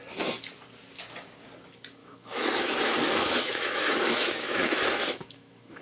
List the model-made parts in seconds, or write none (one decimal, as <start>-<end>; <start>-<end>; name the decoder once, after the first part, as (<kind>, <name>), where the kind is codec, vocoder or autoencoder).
2.0-5.8 (autoencoder, DAC-VAE)